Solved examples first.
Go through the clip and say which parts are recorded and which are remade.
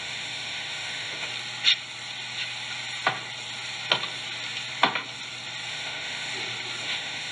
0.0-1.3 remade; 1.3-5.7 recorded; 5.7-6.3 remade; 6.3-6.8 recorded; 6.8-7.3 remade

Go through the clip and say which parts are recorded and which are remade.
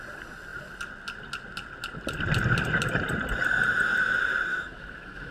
0.0-4.5 recorded; 4.5-5.3 remade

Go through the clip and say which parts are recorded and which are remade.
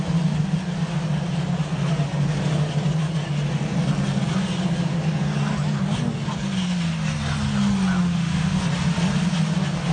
0.0-8.0 recorded; 8.0-8.6 remade; 8.6-9.9 recorded